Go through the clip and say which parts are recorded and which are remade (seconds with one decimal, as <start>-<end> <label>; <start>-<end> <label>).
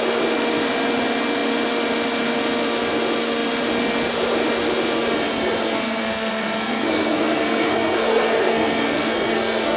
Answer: 0.0-5.6 recorded; 5.6-9.8 remade